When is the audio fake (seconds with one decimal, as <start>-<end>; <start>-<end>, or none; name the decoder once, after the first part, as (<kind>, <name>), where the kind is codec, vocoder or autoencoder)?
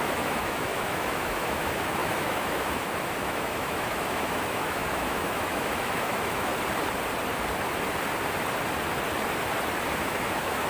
0.0-6.5 (autoencoder, DAC-VAE); 10.0-10.7